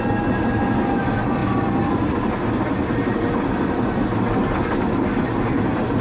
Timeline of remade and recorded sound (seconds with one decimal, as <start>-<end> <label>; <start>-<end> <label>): 0.0-6.0 recorded